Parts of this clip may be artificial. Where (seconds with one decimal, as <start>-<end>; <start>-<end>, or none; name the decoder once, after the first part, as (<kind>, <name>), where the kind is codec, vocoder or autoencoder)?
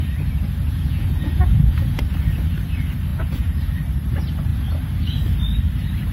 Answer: 0.6-2.0 (vocoder, Vocos); 3.1-3.6